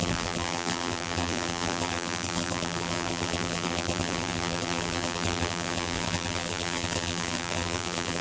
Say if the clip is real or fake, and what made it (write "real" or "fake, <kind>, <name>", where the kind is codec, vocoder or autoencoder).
fake, vocoder, BigVGAN v2